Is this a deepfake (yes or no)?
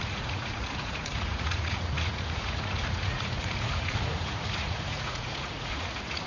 yes